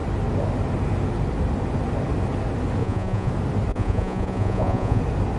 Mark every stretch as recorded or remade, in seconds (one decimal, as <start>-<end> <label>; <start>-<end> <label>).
0.0-2.8 recorded; 2.8-3.3 remade; 3.3-3.7 recorded; 3.7-5.0 remade; 5.0-5.4 recorded